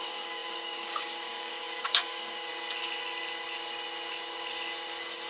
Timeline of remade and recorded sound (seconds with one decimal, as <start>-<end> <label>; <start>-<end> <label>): 0.0-2.5 remade; 2.5-5.3 recorded